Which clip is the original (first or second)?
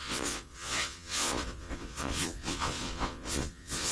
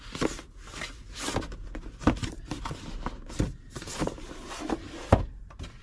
second